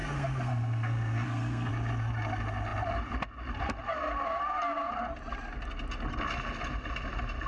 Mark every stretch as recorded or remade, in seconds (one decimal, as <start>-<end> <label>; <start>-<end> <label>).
0.0-1.7 remade; 1.7-7.5 recorded